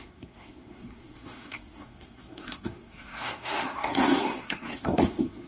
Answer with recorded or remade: remade